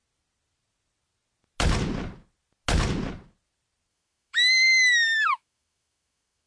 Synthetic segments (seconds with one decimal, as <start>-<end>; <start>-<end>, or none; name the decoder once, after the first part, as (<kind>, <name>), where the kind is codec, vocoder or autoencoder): 3.9-6.5 (autoencoder, DAC-VAE)